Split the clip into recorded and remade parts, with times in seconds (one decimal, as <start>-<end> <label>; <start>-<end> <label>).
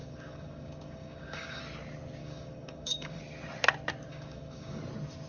0.0-1.6 remade; 1.6-2.2 recorded; 2.2-3.2 remade; 3.2-4.1 recorded; 4.1-4.8 remade; 4.8-5.3 recorded